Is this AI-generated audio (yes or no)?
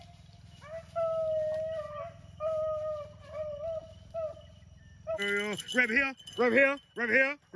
no